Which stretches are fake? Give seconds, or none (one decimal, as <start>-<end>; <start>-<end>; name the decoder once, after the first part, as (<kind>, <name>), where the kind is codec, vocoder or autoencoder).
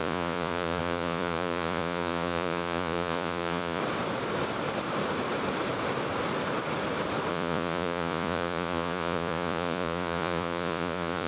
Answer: 0.0-3.8 (vocoder, Vocos); 7.3-11.3